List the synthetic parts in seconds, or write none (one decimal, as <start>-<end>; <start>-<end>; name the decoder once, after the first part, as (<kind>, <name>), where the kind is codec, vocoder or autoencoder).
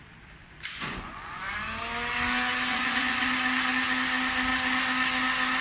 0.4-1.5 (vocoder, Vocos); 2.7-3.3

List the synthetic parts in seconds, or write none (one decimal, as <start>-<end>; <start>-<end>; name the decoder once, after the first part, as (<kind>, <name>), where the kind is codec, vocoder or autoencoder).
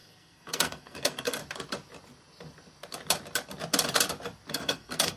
0.0-1.4 (codec, SNAC); 4.5-5.2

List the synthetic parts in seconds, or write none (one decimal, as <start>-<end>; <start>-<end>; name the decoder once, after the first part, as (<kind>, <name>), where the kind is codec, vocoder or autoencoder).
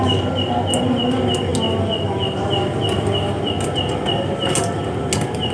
none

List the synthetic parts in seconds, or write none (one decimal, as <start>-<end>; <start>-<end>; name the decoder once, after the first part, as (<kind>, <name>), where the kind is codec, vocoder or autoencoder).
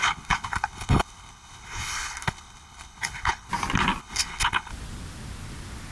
0.0-3.5 (codec, HILCodec); 4.0-4.7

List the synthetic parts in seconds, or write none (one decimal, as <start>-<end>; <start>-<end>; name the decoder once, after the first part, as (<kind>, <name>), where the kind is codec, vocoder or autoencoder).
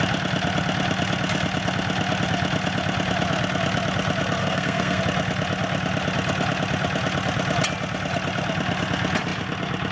4.4-5.0 (codec, SNAC)